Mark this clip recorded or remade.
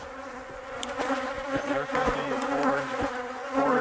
remade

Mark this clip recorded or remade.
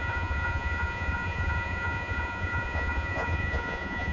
remade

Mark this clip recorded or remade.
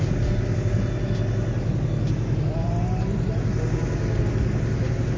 recorded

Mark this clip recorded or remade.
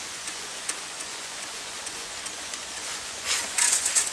remade